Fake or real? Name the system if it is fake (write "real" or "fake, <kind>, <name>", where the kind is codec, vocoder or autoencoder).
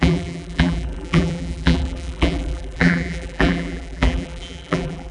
fake, vocoder, BigVGAN v2